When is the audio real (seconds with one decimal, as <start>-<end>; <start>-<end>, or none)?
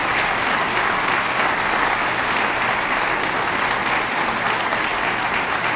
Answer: 0.0-5.8